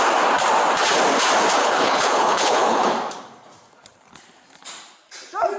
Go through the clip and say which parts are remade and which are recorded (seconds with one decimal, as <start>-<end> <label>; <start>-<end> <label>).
0.0-1.6 recorded; 1.6-2.9 remade; 2.9-5.6 recorded

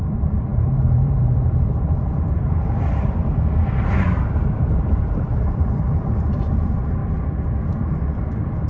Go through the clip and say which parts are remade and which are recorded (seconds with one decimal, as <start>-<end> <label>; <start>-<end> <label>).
0.0-7.0 remade; 7.0-7.7 recorded; 7.7-8.7 remade